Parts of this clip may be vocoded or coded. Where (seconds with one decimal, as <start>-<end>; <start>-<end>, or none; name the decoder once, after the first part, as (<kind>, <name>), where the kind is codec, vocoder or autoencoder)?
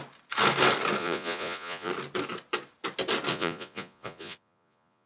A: 1.0-1.9 (vocoder, Vocos); 3.3-5.1